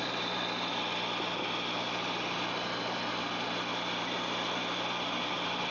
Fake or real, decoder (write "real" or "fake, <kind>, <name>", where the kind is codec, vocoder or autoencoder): real